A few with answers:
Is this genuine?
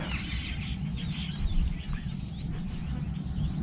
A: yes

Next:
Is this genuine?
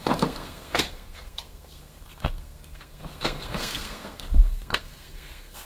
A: no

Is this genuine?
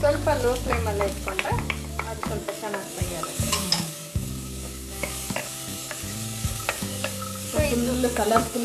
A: no